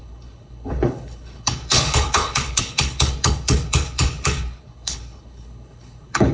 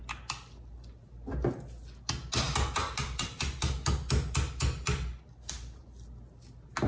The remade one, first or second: first